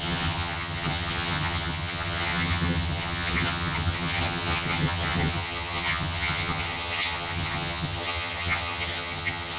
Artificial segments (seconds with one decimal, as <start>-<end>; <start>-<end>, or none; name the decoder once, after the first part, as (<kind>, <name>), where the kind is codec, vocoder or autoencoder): 0.0-9.6 (vocoder, HiFi-GAN)